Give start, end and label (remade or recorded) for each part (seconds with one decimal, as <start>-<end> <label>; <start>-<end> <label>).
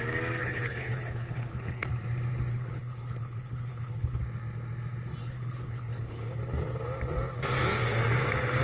0.0-0.4 recorded; 0.4-1.9 remade; 1.9-2.5 recorded; 2.5-4.2 remade; 4.2-5.2 recorded; 5.2-6.4 remade; 6.4-8.6 recorded